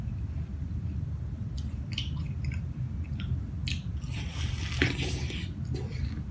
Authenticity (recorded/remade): recorded